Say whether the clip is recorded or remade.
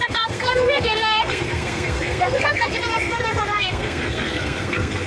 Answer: remade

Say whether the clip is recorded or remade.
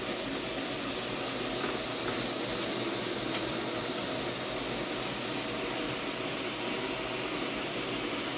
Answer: recorded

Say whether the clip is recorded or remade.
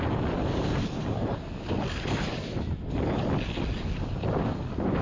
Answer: recorded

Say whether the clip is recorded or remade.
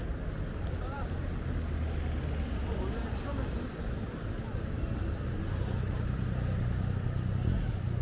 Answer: recorded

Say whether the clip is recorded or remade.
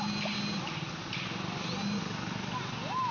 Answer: recorded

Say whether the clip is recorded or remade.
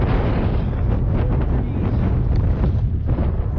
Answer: recorded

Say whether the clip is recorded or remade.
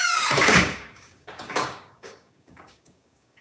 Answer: remade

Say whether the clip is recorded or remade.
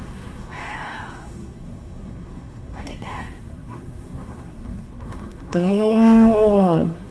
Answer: remade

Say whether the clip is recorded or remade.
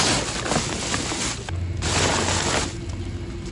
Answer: recorded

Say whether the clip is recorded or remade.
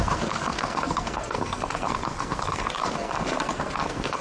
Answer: remade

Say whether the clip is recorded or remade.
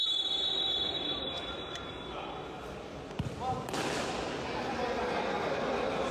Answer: recorded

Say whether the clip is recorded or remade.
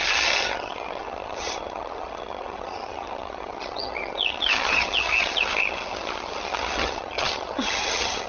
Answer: remade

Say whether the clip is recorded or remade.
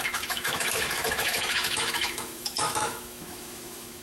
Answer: remade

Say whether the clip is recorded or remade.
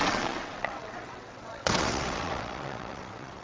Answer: remade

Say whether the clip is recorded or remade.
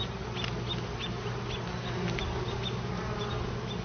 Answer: recorded